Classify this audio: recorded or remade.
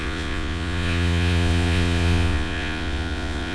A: remade